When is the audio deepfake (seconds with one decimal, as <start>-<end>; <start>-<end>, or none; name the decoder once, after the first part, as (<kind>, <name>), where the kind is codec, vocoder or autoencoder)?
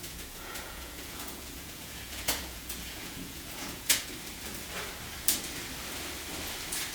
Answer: 0.0-4.1 (vocoder, Vocos)